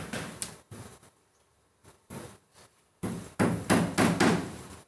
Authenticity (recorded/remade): recorded